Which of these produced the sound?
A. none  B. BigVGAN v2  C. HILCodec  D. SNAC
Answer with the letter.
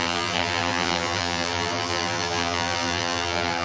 B